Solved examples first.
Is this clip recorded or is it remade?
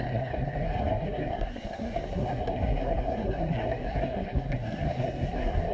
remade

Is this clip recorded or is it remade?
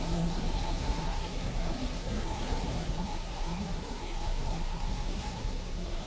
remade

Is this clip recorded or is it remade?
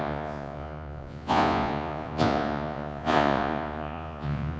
remade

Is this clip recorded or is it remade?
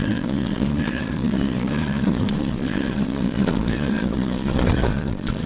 remade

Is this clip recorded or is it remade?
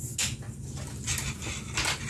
recorded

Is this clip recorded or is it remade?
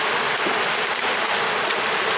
recorded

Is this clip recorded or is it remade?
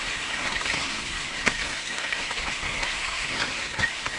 remade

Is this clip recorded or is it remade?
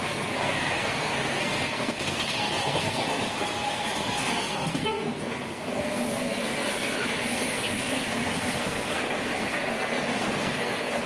remade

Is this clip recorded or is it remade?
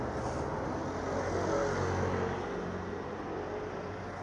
recorded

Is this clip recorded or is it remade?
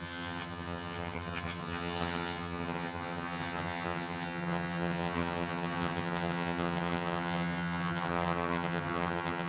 remade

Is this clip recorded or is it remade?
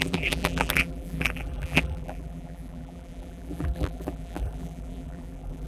remade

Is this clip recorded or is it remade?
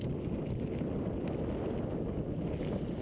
recorded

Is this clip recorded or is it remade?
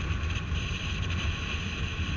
recorded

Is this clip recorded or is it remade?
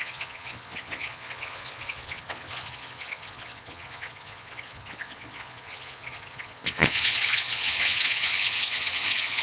remade